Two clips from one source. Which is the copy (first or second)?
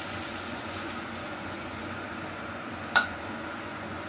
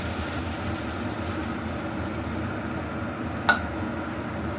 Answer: first